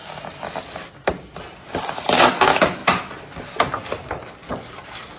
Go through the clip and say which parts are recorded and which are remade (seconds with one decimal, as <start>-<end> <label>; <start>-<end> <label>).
0.0-0.8 remade; 0.8-4.5 recorded; 4.5-5.2 remade